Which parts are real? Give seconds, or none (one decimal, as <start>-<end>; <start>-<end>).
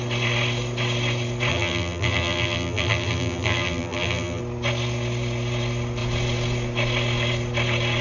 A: 0.0-1.5; 4.4-8.0